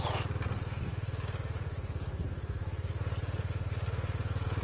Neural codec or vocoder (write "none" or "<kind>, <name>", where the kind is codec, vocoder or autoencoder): none